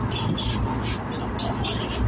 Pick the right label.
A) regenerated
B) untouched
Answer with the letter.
B